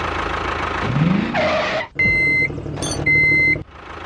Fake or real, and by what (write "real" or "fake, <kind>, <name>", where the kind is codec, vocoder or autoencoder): real